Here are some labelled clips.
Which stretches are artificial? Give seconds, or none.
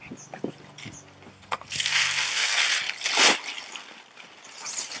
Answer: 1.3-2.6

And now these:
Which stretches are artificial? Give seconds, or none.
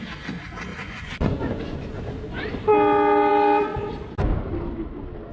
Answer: 0.7-2.0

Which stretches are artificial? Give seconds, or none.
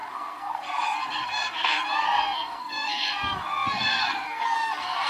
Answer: 0.0-5.1